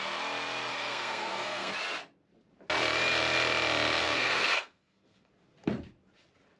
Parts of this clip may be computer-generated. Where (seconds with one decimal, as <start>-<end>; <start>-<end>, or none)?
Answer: 0.7-1.7; 4.0-5.3